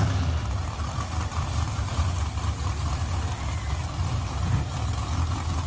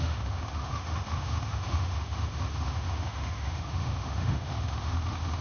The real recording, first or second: first